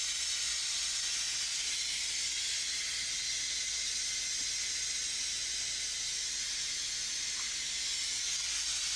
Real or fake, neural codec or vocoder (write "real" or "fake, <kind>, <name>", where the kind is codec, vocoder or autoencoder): real